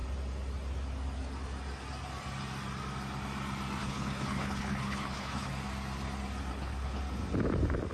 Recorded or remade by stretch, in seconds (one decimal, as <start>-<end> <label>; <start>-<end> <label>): 0.0-3.8 recorded; 3.8-5.5 remade; 5.5-6.5 recorded; 6.5-7.0 remade; 7.0-7.9 recorded